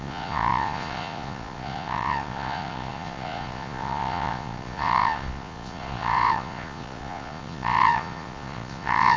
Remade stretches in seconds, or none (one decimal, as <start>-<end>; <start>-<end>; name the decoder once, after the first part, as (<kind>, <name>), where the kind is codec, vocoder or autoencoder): 0.0-9.2 (vocoder, Vocos)